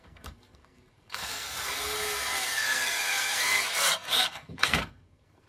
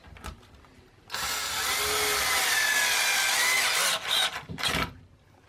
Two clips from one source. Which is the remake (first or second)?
first